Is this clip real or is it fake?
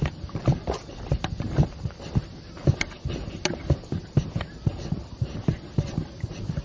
real